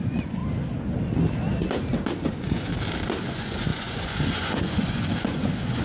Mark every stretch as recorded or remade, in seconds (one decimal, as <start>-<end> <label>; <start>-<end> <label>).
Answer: 0.0-0.4 remade; 0.4-2.3 recorded; 2.3-2.7 remade; 2.7-3.3 recorded; 3.3-5.8 remade